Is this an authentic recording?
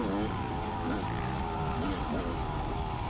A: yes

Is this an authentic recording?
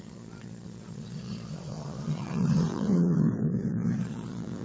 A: no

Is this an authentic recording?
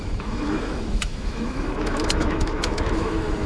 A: no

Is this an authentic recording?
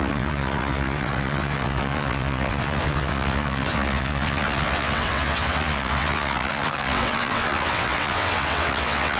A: no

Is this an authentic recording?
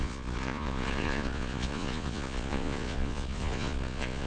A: no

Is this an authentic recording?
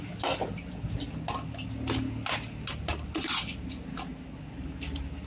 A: yes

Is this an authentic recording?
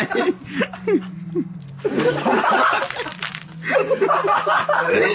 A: yes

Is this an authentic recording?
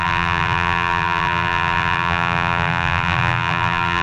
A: no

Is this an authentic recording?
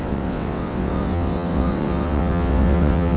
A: no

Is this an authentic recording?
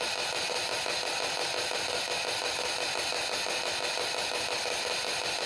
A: yes